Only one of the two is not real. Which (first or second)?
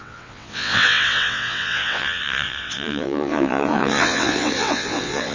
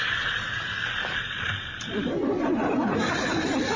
first